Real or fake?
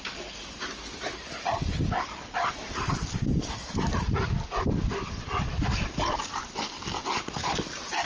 real